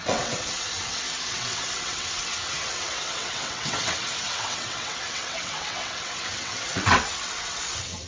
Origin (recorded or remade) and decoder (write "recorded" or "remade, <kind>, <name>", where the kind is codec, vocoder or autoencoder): remade, vocoder, WaveNeXt